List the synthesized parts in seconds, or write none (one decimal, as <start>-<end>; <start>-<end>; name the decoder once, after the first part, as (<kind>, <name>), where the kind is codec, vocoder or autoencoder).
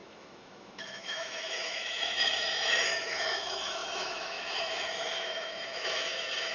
0.0-6.5 (autoencoder, DAC-VAE)